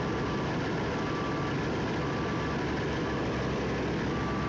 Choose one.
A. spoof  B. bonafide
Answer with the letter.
B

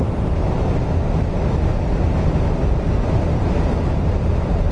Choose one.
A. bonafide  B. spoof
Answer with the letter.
A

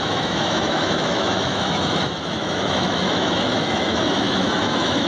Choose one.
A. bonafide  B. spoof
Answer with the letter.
B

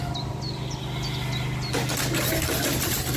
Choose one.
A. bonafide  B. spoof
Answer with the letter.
A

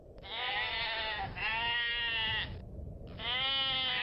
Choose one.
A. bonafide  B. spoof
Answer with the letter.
A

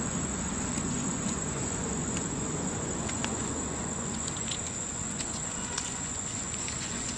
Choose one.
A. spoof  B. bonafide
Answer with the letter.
A